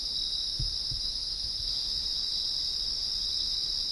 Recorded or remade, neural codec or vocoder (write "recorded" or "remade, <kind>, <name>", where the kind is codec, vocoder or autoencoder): recorded